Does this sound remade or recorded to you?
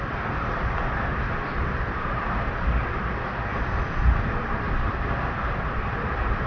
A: remade